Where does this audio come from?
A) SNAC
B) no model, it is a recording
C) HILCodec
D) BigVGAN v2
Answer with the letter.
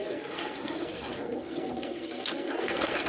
A